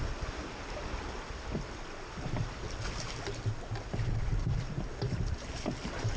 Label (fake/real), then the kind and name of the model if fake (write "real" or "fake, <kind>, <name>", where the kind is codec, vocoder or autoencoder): real